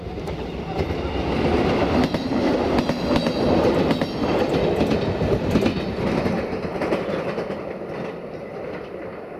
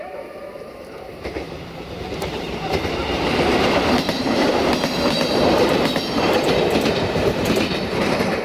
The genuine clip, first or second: first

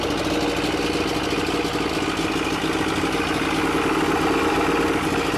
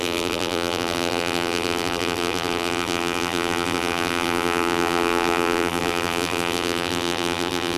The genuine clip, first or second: first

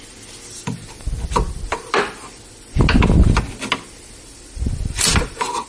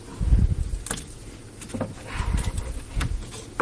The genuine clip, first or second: second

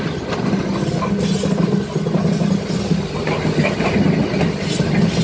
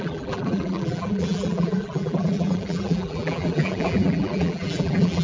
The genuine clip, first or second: first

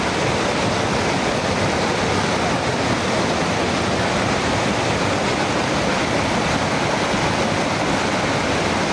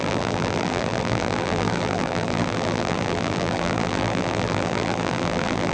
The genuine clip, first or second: first